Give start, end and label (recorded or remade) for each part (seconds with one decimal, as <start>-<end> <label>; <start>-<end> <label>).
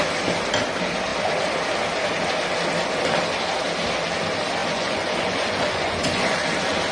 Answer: 0.0-4.6 recorded; 4.6-6.5 remade; 6.5-6.9 recorded